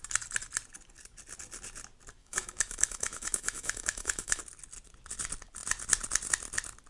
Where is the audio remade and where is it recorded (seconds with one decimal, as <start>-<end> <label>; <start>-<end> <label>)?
0.0-2.2 recorded; 2.2-4.4 remade; 4.4-6.9 recorded